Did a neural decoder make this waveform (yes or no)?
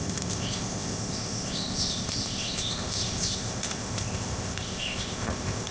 yes